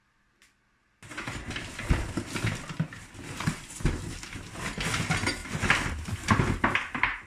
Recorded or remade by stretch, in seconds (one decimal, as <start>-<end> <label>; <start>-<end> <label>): 0.0-7.3 recorded